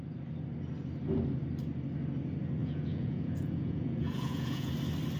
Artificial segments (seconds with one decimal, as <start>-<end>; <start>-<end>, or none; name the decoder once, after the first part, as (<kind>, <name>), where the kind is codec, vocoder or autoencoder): 2.6-4.7 (vocoder, Vocos)